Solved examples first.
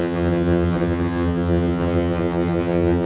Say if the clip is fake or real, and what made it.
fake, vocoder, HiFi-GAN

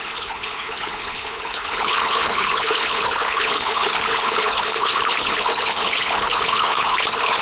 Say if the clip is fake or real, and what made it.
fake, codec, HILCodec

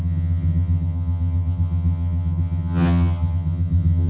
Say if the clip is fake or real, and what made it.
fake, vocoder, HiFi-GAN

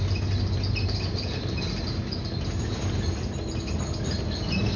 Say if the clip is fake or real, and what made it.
real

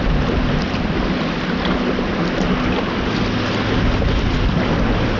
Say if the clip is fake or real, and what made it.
real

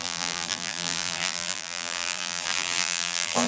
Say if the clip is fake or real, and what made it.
fake, vocoder, BigVGAN v2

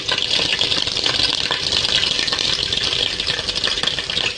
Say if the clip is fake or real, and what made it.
real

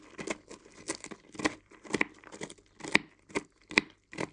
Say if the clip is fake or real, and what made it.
real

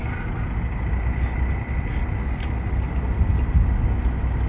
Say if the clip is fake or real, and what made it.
real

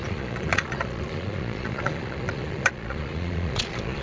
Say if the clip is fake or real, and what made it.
fake, vocoder, Vocos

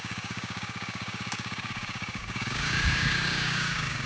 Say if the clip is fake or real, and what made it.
fake, codec, DAC